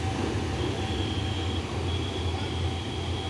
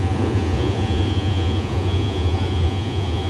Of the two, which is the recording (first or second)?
first